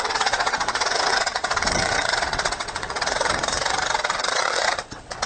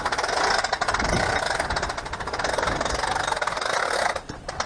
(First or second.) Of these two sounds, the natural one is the second